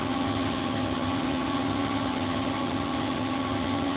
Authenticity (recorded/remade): remade